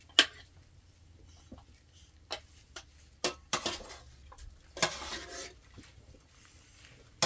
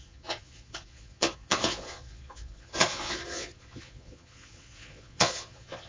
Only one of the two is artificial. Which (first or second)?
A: second